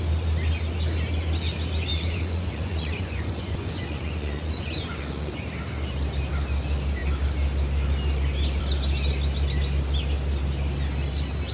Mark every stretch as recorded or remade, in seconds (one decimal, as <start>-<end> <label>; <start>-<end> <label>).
0.0-1.9 recorded; 1.9-5.4 remade; 5.4-11.5 recorded